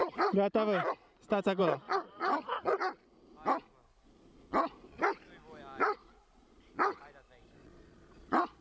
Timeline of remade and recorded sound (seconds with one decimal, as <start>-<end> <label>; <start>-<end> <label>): 0.0-1.6 recorded; 1.6-2.7 remade; 2.7-7.6 recorded; 7.6-8.6 remade